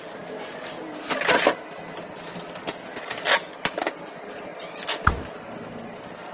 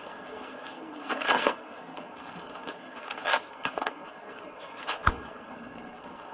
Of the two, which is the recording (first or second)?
first